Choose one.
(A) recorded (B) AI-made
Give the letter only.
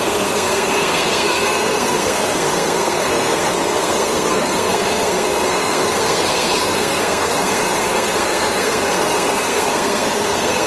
B